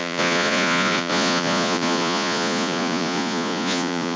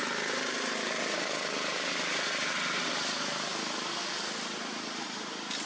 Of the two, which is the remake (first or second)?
first